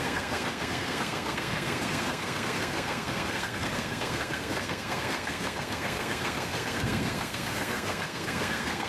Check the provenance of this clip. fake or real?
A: fake